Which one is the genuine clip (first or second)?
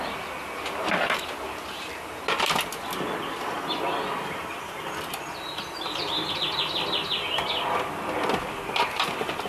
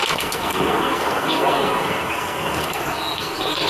first